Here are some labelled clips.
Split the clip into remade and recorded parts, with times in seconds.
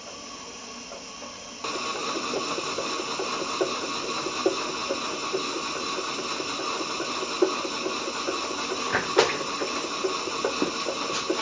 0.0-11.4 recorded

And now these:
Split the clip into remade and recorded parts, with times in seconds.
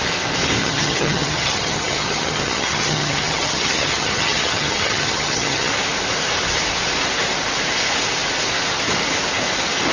0.0-0.6 recorded; 0.6-5.7 remade; 5.7-9.9 recorded